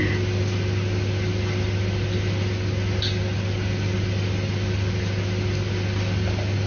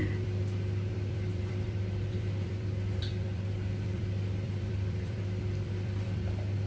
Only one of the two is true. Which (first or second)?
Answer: first